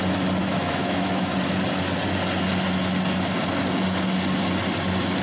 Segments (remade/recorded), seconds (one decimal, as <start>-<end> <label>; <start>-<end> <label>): 0.0-0.4 recorded; 0.4-1.3 remade; 1.3-5.2 recorded